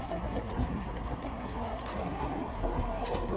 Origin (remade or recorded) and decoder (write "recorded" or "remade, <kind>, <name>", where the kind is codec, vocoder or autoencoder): remade, codec, SNAC